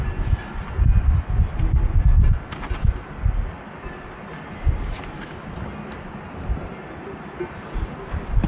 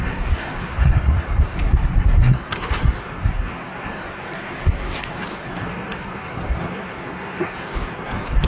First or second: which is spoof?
second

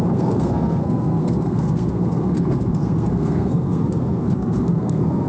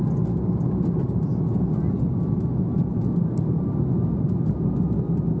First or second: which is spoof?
first